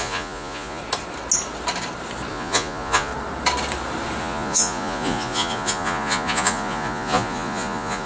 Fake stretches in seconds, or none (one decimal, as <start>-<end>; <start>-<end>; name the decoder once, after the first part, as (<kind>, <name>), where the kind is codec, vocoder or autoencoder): 0.0-0.8 (vocoder, Vocos); 2.3-3.1; 4.2-8.1